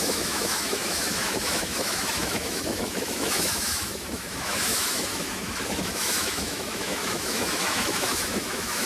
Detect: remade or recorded remade